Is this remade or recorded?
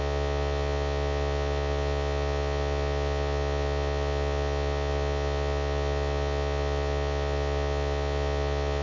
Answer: recorded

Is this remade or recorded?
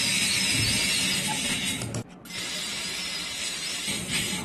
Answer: recorded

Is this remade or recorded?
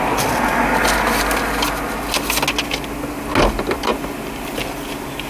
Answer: recorded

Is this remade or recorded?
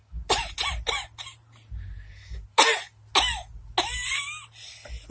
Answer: recorded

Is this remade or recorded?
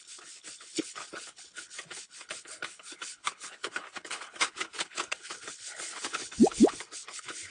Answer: remade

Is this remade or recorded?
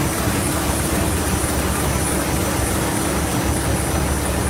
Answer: recorded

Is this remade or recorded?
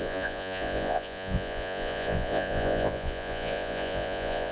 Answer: remade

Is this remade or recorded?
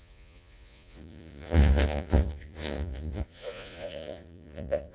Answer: remade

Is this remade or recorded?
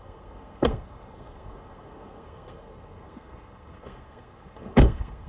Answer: remade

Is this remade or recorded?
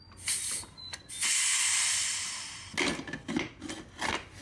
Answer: recorded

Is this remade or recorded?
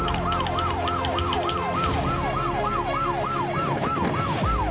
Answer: recorded